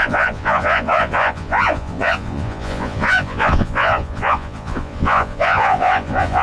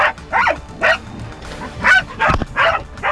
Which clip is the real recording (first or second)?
second